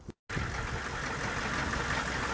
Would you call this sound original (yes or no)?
yes